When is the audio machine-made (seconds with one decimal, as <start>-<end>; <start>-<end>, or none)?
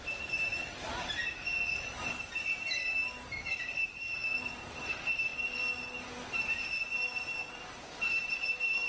0.0-0.9; 2.0-5.3; 6.0-7.4; 8.0-8.9